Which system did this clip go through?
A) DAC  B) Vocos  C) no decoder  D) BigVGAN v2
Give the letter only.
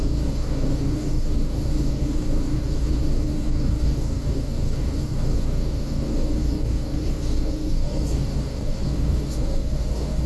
A